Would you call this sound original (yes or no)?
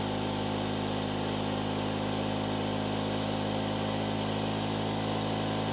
yes